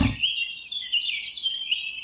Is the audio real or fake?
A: fake